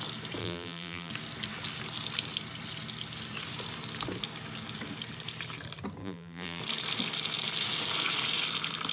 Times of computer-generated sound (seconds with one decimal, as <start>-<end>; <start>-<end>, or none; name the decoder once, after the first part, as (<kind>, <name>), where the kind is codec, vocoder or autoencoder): 0.4-1.1 (vocoder, BigVGAN v2); 6.0-6.6